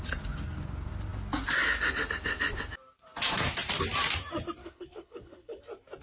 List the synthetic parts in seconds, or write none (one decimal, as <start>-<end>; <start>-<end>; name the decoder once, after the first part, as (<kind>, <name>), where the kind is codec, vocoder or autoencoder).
4.6-5.6 (codec, HILCodec)